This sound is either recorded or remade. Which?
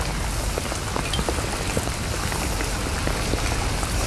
recorded